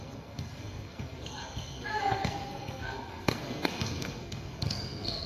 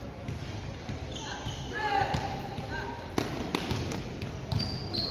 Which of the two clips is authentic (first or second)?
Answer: second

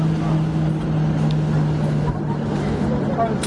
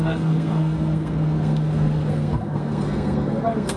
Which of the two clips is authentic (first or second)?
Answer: first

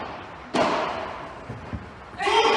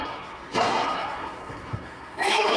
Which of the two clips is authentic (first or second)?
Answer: first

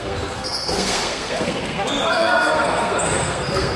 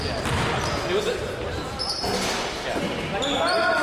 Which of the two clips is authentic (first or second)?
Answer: second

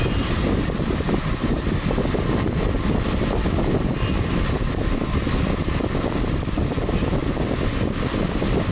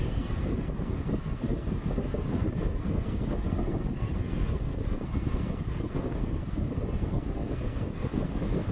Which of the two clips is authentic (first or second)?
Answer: first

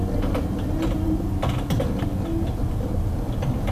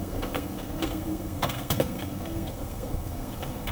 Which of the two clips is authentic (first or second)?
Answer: first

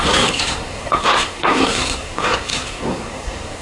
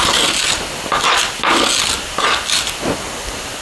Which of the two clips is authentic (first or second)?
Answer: second